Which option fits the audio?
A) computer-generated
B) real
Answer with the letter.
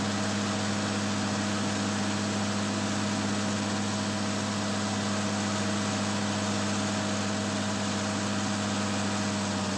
B